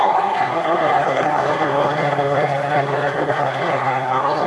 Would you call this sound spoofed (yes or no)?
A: yes